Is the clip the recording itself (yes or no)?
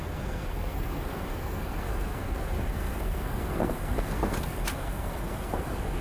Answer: no